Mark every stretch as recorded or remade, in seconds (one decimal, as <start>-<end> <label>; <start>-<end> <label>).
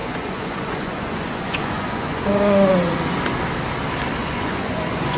0.0-3.1 remade; 3.1-4.2 recorded; 4.2-5.2 remade